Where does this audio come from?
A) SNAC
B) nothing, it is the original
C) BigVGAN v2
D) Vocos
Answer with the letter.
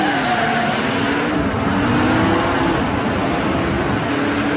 B